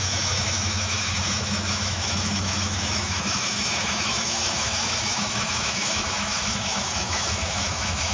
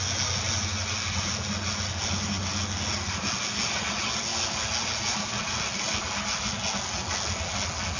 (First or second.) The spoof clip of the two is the first